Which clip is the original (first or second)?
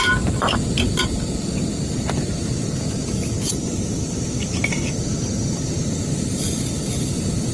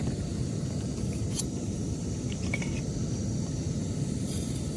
first